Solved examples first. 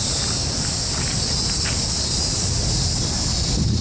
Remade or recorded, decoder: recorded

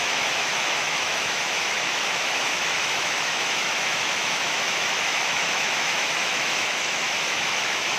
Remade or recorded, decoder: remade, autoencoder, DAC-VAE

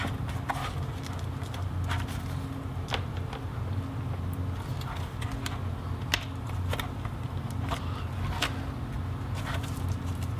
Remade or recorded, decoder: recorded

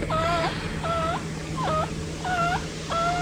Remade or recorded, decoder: recorded